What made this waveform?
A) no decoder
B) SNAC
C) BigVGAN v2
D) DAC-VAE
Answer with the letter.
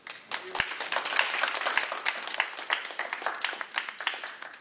A